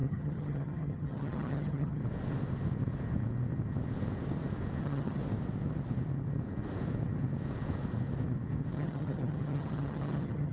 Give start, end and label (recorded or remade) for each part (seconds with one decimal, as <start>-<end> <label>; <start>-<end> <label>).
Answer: 0.0-2.0 remade; 2.0-4.8 recorded; 4.8-5.2 remade; 5.2-8.7 recorded; 8.7-10.5 remade